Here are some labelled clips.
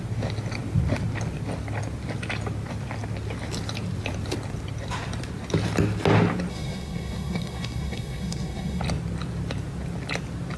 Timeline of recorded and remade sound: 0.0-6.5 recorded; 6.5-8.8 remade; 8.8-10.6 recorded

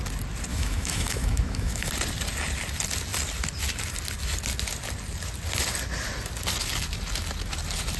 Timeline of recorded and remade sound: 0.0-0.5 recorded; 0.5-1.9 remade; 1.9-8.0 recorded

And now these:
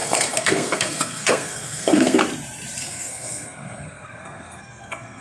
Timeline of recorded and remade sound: 0.0-2.2 remade; 2.2-2.8 recorded; 2.8-5.2 remade